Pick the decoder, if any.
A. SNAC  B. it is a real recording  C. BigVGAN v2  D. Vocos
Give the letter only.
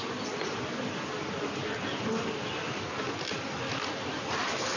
B